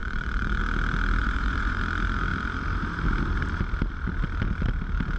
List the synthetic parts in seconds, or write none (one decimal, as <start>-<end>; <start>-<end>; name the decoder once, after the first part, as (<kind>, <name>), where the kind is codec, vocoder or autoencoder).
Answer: 0.0-0.6 (vocoder, Vocos); 1.2-1.8